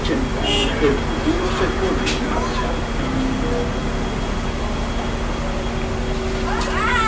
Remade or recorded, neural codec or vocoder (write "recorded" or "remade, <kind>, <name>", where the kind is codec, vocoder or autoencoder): recorded